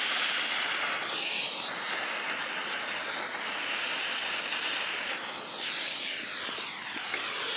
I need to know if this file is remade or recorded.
recorded